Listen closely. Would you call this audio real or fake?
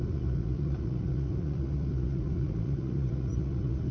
fake